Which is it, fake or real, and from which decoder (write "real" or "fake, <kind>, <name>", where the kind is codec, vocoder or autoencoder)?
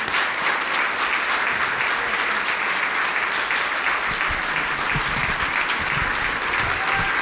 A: real